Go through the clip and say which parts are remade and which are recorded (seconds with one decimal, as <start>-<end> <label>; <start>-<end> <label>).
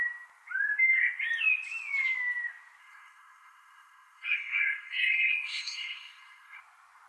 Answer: 0.0-2.8 recorded; 2.8-6.6 remade; 6.6-7.1 recorded